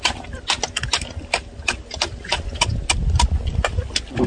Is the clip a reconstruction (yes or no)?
no